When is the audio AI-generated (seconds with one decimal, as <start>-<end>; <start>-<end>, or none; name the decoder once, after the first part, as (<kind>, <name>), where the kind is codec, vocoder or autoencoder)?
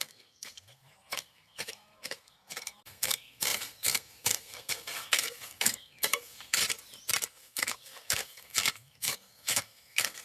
0.0-6.6 (codec, SNAC); 7.3-10.2